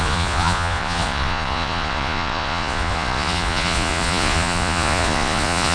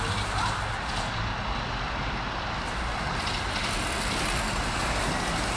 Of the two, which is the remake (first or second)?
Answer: first